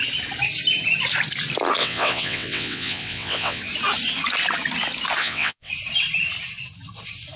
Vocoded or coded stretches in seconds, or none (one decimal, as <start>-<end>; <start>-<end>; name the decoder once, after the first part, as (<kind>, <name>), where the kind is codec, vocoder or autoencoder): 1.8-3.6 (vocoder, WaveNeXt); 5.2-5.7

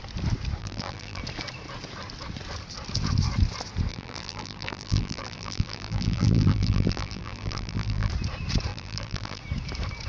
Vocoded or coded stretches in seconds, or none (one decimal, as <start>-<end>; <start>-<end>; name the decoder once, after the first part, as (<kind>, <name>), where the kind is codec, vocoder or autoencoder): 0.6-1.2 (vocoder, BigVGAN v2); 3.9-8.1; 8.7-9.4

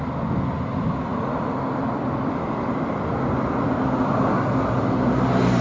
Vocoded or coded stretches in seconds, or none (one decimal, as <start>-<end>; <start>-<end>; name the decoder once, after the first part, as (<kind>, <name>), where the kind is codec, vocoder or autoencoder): none

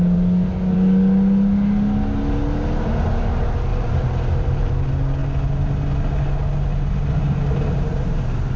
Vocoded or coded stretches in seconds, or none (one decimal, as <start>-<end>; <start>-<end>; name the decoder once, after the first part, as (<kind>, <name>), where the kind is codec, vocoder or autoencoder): 3.7-4.7 (vocoder, BigVGAN v2)

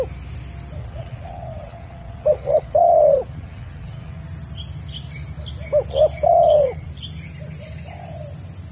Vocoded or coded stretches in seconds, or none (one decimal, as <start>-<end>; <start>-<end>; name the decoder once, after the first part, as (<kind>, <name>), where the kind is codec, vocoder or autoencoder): 0.8-4.2 (vocoder, WaveNeXt); 6.3-6.9

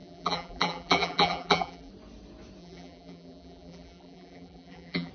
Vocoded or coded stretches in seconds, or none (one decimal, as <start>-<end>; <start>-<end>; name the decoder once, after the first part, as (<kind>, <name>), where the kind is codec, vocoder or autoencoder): 0.0-1.9 (vocoder, BigVGAN v2); 2.6-5.1

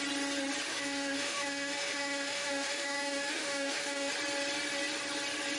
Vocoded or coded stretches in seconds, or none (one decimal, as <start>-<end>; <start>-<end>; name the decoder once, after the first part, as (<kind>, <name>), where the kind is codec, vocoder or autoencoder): 0.7-4.1 (autoencoder, DAC-VAE)